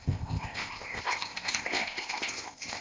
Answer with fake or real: fake